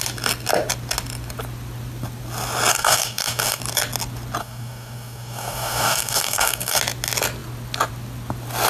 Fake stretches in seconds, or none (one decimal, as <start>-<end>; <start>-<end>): 2.7-3.6; 4.4-6.8